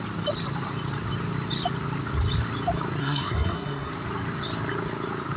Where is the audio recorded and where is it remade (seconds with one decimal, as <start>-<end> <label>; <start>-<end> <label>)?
0.0-3.0 recorded; 3.0-3.9 remade; 3.9-5.4 recorded